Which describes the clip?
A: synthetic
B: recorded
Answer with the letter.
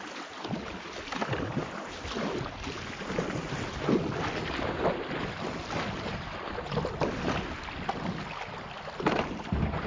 B